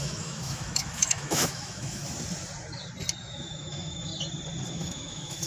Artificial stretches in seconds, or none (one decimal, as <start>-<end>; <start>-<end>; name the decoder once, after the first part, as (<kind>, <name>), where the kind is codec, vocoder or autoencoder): 0.0-2.0 (autoencoder, DAC-VAE); 3.2-4.1; 4.7-5.5